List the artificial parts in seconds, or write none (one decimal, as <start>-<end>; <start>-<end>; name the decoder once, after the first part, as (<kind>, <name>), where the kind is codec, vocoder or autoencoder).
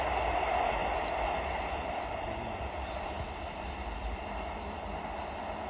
0.8-4.2 (vocoder, BigVGAN v2)